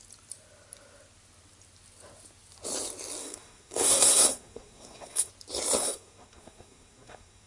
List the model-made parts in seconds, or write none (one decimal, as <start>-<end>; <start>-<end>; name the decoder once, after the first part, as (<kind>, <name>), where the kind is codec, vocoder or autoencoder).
3.2-5.3 (codec, SNAC); 5.8-7.5